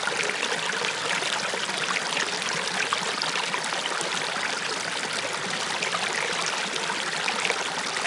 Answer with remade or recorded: recorded